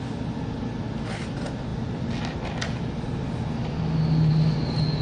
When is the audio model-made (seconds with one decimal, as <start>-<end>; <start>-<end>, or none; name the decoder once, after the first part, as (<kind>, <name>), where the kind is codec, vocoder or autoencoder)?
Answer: none